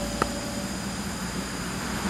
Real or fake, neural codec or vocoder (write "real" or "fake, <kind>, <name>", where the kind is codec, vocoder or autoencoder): real